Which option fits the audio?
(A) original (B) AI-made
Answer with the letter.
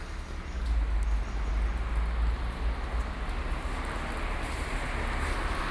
A